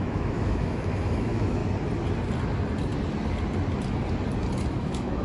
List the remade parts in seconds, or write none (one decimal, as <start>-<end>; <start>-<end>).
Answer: 0.0-1.6; 4.7-5.2